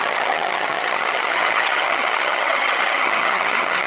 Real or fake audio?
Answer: fake